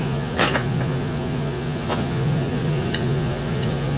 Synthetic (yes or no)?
yes